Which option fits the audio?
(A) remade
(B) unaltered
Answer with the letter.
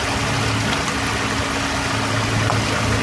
B